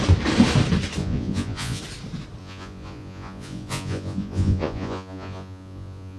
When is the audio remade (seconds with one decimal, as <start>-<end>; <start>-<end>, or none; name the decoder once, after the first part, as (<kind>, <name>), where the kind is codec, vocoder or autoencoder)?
1.0-1.8 (vocoder, Vocos); 2.4-6.2